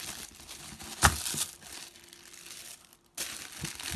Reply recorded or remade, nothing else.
recorded